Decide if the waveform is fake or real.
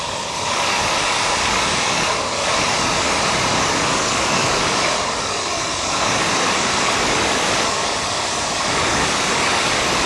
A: fake